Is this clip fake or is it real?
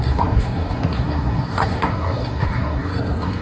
fake